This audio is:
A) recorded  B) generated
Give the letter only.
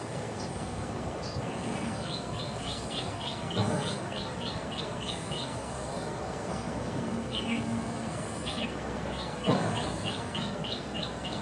B